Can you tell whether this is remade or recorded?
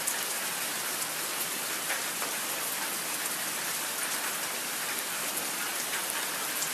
recorded